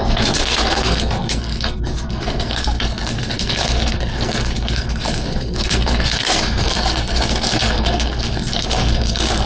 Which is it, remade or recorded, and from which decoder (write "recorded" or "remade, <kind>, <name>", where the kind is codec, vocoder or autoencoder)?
remade, codec, SNAC